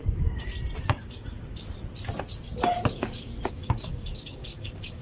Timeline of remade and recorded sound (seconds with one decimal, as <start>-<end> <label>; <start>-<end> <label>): 0.0-0.5 remade; 0.5-3.5 recorded; 3.5-5.0 remade